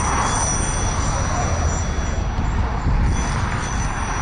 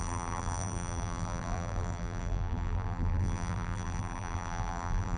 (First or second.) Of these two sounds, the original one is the first